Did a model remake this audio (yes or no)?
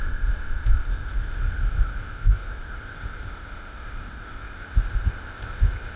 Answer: yes